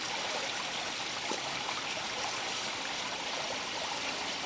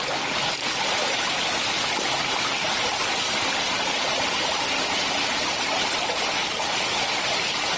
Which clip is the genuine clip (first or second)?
second